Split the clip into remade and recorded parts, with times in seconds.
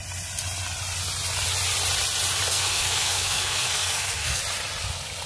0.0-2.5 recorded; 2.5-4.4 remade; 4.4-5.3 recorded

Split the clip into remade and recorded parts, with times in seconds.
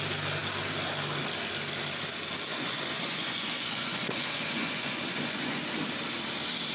0.0-2.5 recorded; 2.5-5.6 remade; 5.6-6.7 recorded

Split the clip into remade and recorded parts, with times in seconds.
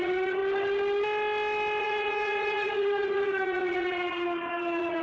0.0-0.4 remade; 0.4-1.8 recorded; 1.8-5.0 remade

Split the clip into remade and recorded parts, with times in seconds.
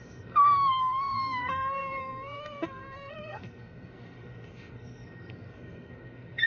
0.0-6.5 remade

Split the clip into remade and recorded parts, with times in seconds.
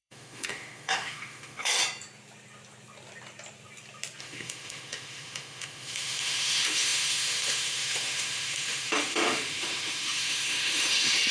0.0-1.8 remade; 1.8-4.2 recorded; 4.2-11.3 remade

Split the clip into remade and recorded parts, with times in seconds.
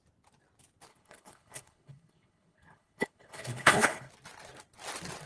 0.0-0.9 recorded; 0.9-4.1 remade; 4.1-5.3 recorded